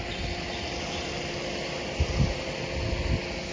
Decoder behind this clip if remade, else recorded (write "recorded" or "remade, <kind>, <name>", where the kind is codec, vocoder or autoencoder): recorded